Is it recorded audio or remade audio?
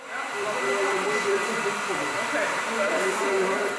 remade